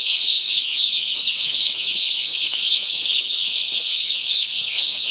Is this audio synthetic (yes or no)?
yes